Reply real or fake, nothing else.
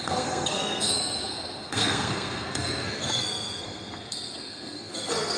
fake